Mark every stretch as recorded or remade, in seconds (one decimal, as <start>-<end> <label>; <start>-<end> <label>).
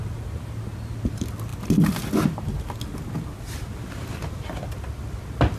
0.0-5.6 recorded